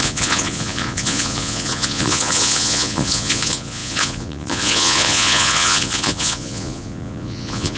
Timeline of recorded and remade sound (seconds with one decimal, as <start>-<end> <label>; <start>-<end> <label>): 0.0-7.8 remade